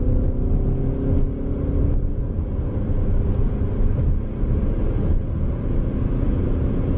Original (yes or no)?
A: yes